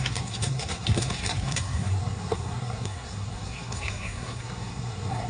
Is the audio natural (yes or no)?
no